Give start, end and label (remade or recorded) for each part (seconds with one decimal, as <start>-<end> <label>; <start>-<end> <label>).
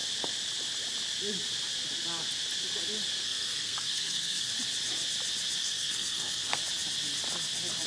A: 0.0-3.2 recorded; 3.2-4.5 remade; 4.5-5.6 recorded; 5.6-6.6 remade; 6.6-7.9 recorded